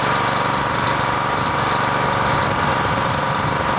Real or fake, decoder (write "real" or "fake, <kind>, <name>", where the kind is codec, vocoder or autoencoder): real